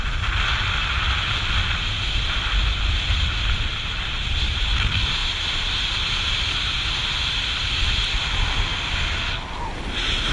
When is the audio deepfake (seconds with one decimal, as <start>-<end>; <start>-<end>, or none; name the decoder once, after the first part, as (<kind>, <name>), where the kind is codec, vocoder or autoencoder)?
none

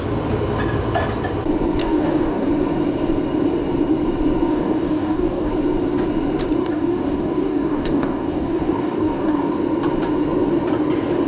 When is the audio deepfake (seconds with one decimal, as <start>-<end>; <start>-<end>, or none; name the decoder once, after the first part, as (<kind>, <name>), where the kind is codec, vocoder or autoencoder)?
1.8-2.5 (codec, DAC); 4.5-5.5; 6.6-9.5

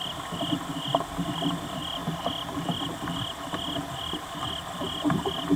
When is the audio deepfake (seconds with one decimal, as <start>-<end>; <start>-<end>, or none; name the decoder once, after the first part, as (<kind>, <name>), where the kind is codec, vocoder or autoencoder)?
none

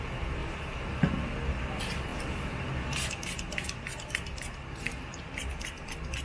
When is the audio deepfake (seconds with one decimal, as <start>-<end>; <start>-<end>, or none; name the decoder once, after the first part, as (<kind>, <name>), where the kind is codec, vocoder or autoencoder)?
0.4-1.0 (vocoder, BigVGAN v2); 2.1-5.2

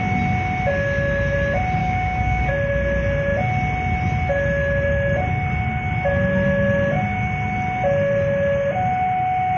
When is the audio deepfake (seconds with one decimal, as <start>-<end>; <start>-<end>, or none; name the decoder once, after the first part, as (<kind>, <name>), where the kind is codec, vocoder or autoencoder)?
1.8-2.5 (codec, DAC)